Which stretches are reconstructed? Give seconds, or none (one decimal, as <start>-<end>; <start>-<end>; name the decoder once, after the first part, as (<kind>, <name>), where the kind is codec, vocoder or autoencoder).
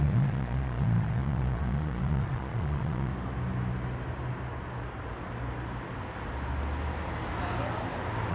0.0-3.1 (vocoder, Vocos)